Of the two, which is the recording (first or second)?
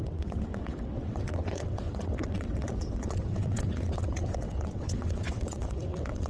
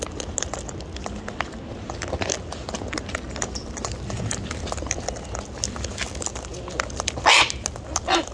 second